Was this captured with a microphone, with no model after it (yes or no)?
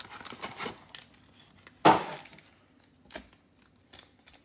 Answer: yes